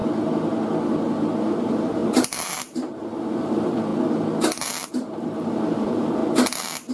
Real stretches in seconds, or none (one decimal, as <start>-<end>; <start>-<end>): 0.0-1.4; 3.9-4.9; 6.2-6.9